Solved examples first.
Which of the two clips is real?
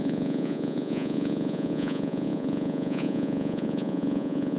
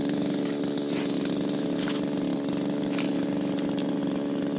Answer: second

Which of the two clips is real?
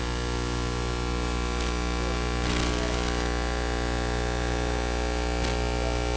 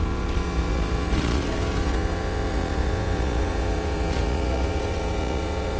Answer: first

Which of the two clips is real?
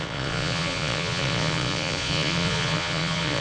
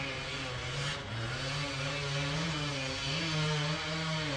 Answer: second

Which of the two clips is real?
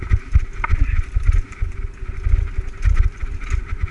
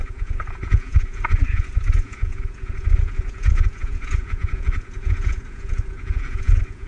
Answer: first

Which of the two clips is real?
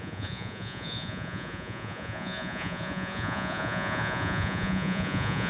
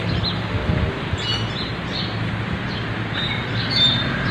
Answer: second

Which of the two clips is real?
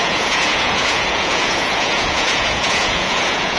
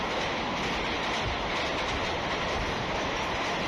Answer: second